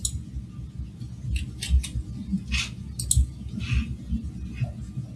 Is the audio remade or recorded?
recorded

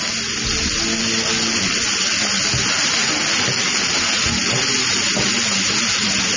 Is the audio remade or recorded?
recorded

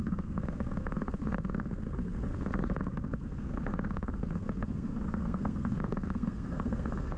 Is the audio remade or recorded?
remade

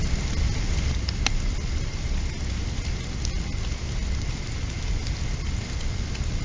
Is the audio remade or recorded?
recorded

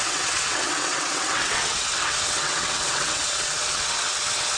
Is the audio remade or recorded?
remade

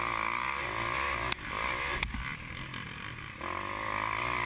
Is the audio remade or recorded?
recorded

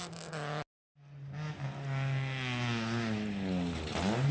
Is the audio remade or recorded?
recorded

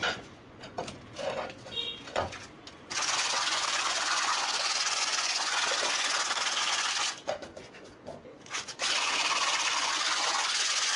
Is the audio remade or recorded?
remade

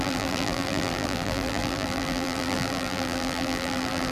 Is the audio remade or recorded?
remade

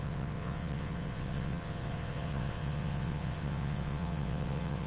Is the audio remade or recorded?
remade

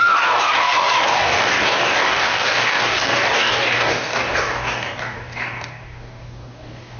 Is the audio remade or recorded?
remade